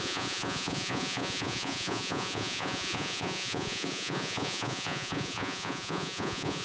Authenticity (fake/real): fake